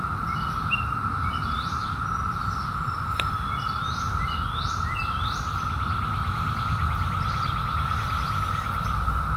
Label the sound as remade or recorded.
remade